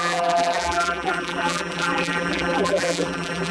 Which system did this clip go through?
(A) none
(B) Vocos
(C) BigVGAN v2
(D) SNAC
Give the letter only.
C